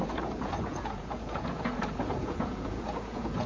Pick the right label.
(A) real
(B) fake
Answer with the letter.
B